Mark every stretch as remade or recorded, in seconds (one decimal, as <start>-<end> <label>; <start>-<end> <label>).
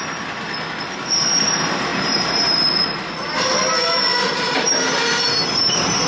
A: 0.0-1.9 recorded; 1.9-2.7 remade; 2.7-4.1 recorded; 4.1-4.8 remade; 4.8-5.4 recorded; 5.4-6.1 remade